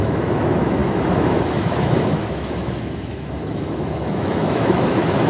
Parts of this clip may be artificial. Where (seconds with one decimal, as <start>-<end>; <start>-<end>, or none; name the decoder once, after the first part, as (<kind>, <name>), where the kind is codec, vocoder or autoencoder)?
0.0-5.3 (autoencoder, DAC-VAE)